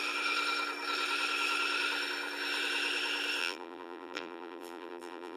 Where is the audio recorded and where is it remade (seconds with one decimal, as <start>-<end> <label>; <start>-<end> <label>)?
0.0-3.4 recorded; 3.4-5.4 remade